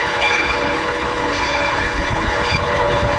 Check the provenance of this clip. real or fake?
fake